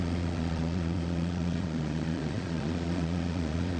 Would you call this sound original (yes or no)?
no